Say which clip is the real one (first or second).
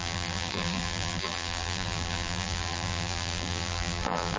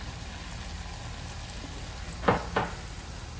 second